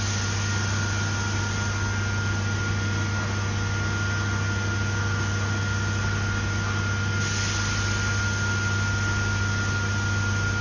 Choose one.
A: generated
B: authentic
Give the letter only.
B